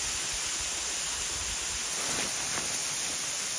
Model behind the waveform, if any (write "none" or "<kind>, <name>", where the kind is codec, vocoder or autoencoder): none